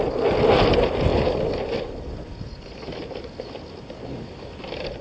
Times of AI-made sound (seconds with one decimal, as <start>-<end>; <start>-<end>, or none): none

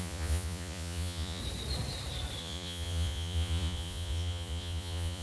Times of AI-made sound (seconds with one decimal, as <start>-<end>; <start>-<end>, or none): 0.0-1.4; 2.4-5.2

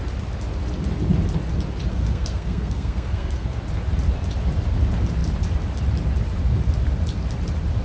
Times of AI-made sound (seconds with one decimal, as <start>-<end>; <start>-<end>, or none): 1.9-3.6

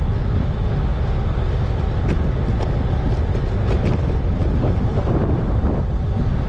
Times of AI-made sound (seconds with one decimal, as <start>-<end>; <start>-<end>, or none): 4.4-5.6

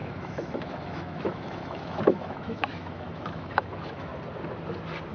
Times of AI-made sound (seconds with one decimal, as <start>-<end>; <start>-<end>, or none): 0.0-4.1

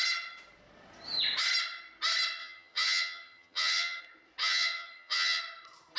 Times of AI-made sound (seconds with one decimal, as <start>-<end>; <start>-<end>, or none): 2.4-4.0; 4.4-5.4